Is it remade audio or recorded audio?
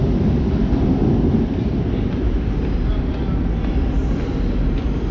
recorded